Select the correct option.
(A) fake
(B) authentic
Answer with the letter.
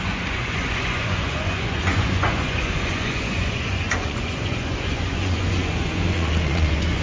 A